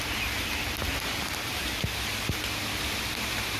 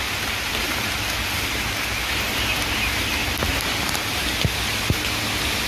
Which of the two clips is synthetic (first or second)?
first